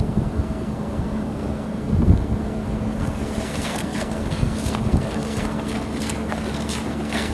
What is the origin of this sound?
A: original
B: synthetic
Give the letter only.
B